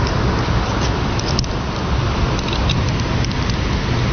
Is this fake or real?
real